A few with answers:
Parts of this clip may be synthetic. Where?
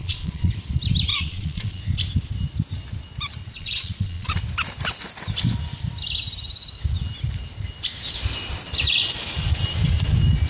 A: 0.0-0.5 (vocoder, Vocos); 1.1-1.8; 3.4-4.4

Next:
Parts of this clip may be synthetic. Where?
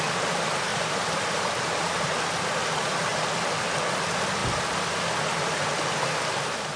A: 0.7-2.2 (vocoder, BigVGAN v2)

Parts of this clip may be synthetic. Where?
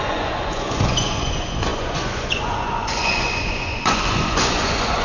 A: 0.0-5.0 (vocoder, Vocos)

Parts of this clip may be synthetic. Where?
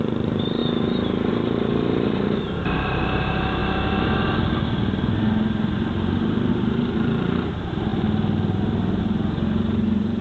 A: 0.0-0.6 (vocoder, BigVGAN v2); 1.3-3.6; 6.5-7.9; 9.0-10.2